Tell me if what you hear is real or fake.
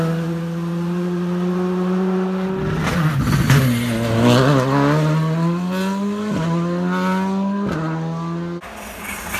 real